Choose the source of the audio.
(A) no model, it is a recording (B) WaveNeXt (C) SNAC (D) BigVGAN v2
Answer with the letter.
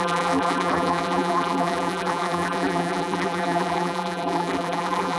D